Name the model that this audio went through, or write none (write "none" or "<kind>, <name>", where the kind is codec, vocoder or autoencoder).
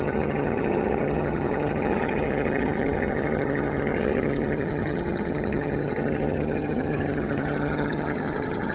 vocoder, HiFi-GAN